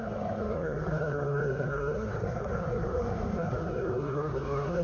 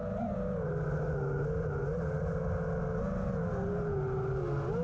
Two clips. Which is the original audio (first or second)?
second